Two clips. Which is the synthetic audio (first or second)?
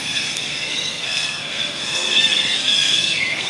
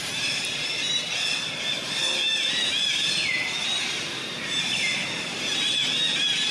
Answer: first